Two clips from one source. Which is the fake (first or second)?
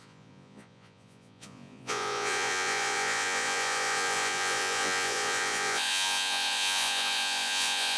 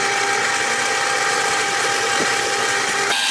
first